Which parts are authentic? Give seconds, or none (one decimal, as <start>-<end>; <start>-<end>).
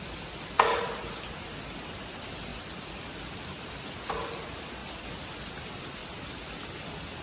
0.0-2.5; 3.2-6.0; 6.5-7.2